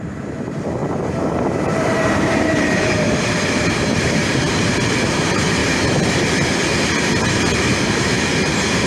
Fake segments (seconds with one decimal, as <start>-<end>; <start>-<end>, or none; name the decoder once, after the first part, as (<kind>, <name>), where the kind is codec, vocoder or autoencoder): 0.0-0.8 (vocoder, BigVGAN v2); 1.8-5.6; 7.7-8.9